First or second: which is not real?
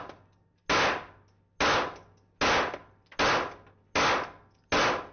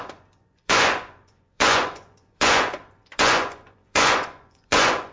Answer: second